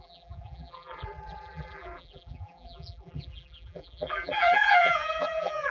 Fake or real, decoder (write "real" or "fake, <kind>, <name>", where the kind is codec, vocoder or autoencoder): fake, vocoder, BigVGAN v2